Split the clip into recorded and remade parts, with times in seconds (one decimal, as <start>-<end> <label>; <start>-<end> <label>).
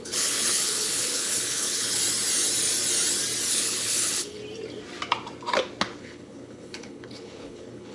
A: 0.0-2.0 remade; 2.0-3.5 recorded; 3.5-4.4 remade; 4.4-6.0 recorded; 6.0-7.9 remade